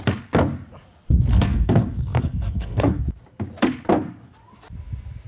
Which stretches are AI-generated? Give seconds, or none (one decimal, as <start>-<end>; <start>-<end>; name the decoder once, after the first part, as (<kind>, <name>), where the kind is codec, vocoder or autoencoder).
1.3-3.0 (codec, SNAC)